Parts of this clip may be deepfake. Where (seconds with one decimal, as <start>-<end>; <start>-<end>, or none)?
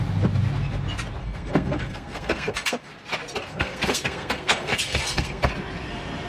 1.2-2.9; 3.4-5.5